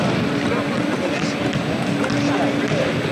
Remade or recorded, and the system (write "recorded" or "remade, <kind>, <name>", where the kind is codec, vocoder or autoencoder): recorded